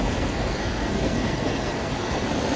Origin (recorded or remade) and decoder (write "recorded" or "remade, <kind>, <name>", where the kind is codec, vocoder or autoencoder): remade, codec, SNAC